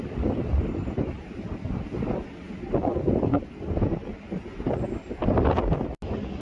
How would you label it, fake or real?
real